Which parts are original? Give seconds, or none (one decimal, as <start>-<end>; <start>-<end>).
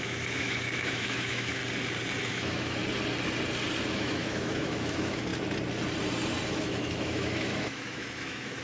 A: 1.6-2.2; 2.8-3.9; 5.3-6.5